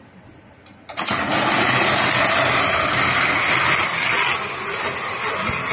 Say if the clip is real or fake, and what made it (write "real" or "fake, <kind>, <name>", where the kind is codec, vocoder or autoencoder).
real